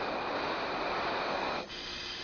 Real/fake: real